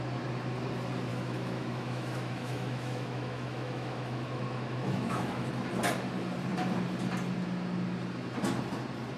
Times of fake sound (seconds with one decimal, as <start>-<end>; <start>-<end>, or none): 1.1-5.5